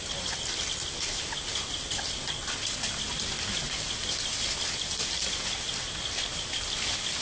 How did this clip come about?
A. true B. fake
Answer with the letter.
A